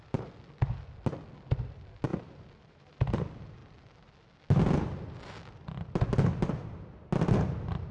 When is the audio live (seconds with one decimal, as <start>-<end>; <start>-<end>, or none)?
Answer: 0.0-2.1; 3.0-7.9